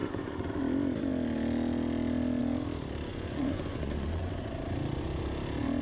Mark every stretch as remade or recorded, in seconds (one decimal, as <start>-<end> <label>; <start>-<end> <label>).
0.0-0.6 remade; 0.6-3.1 recorded; 3.1-4.4 remade; 4.4-5.8 recorded